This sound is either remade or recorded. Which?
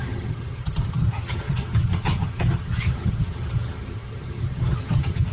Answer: remade